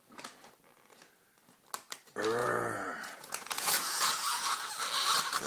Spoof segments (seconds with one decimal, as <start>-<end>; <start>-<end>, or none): 2.4-4.7